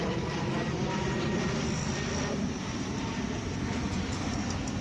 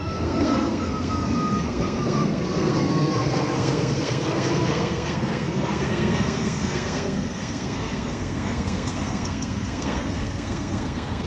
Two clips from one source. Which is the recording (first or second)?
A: first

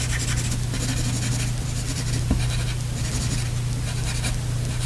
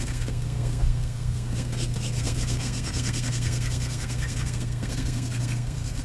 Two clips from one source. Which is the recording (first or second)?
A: first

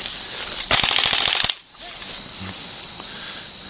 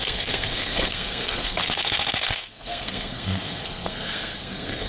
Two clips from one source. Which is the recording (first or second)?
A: first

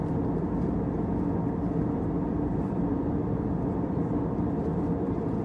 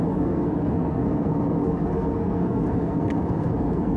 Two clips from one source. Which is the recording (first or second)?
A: first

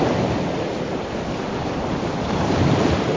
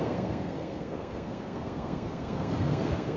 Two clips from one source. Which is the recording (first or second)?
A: first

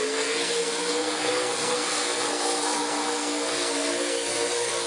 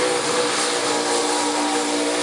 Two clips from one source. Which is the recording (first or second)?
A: second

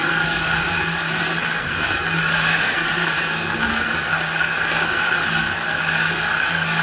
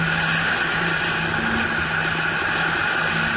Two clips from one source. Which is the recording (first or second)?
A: second